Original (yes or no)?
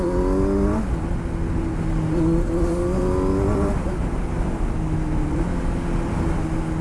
yes